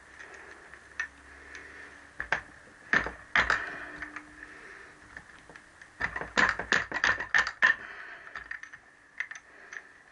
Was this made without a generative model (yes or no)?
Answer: yes